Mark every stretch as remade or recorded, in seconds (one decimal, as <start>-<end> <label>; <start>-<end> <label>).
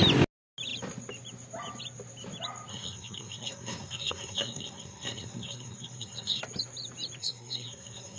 0.0-2.7 recorded; 2.7-6.4 remade; 6.4-7.2 recorded; 7.2-8.2 remade